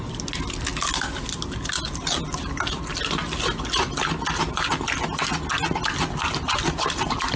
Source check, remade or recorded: recorded